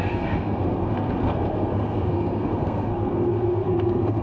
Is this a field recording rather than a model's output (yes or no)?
no